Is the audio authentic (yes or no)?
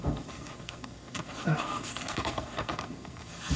no